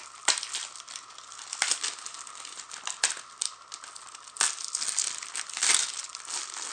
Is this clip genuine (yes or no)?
yes